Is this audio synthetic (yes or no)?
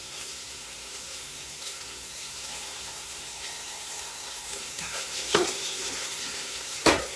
yes